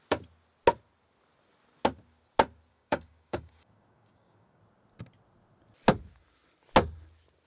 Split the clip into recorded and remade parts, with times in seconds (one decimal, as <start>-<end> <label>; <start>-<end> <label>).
0.0-2.7 recorded; 2.7-4.6 remade; 4.6-7.5 recorded